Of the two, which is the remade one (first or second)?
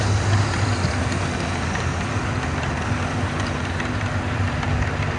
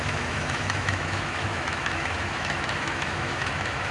second